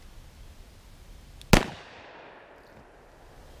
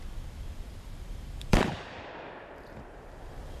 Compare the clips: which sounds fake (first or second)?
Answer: second